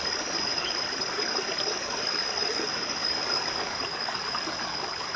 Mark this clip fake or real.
fake